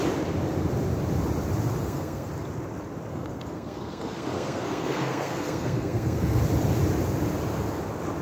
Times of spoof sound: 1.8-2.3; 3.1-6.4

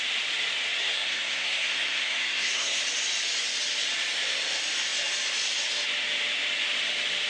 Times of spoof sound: 0.8-2.8

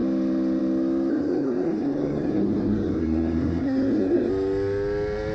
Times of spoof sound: 1.1-4.3

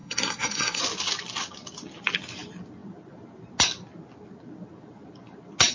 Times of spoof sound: 0.0-0.8

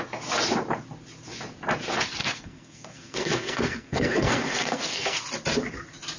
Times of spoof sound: 2.2-5.2

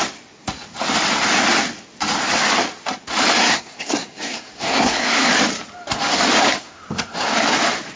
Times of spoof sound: 3.4-5.3; 6.6-7.3